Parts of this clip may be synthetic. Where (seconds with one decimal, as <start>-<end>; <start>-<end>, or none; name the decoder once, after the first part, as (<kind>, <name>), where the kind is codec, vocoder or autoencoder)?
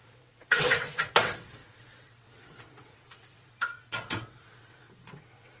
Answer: 0.0-5.6 (vocoder, WaveNeXt)